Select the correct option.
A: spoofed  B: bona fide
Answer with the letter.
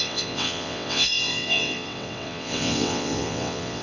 A